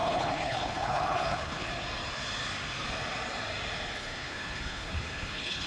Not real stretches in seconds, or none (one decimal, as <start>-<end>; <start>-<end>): 0.0-1.7; 4.0-5.7

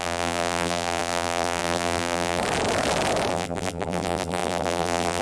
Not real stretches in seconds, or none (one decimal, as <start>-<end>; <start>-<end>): 0.0-2.4; 3.3-5.2

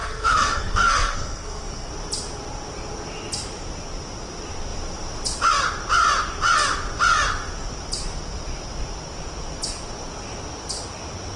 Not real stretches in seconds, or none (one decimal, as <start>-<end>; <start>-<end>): 0.0-1.9

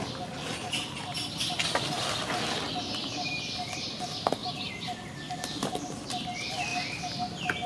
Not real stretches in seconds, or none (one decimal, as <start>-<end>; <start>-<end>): none

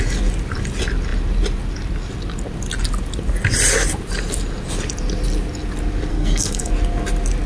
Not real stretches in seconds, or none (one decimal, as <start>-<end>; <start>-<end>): 6.1-6.7

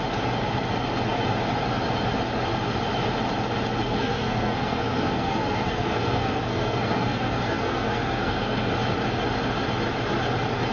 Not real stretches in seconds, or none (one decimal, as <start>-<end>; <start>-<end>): 3.8-8.7

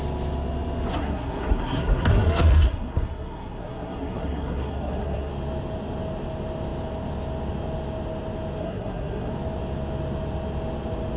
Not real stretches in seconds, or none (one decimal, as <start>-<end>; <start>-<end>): 0.9-5.3; 8.6-9.3